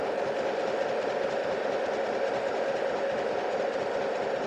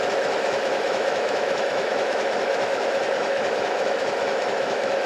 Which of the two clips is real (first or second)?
first